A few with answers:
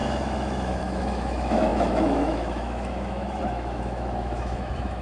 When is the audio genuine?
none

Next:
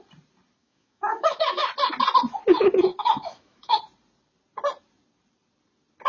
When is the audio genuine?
0.0-0.6; 1.7-3.0; 3.8-6.1

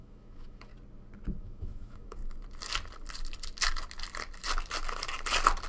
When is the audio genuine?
0.7-1.4; 2.2-5.7

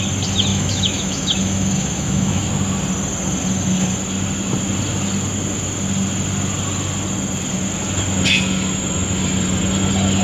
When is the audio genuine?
0.0-0.5; 2.5-10.2

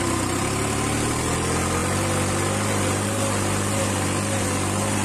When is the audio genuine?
0.0-5.0

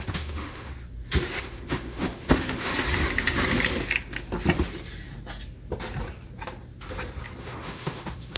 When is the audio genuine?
0.7-1.4; 2.7-7.4